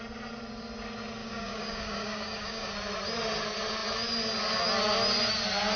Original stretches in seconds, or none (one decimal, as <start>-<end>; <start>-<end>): 0.0-1.2; 2.7-5.8